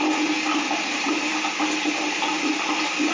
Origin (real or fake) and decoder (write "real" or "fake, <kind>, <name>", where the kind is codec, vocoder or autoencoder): real